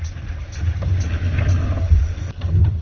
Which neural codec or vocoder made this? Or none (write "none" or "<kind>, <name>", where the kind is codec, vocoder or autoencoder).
none